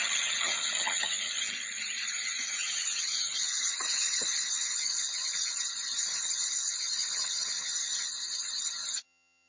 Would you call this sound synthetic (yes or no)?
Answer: yes